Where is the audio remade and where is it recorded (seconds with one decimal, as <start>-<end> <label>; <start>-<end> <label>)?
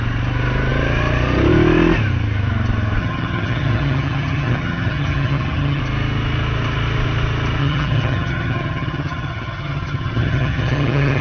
0.0-3.0 recorded; 3.0-5.8 remade; 5.8-7.6 recorded; 7.6-11.2 remade